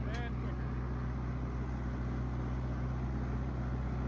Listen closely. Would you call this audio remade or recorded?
recorded